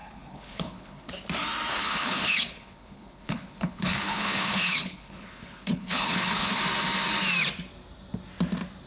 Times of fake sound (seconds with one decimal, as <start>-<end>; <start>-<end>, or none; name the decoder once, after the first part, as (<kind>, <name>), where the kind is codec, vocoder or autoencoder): 0.0-1.1 (codec, HILCodec); 1.7-6.6